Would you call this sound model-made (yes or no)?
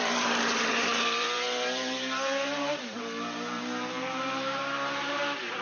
yes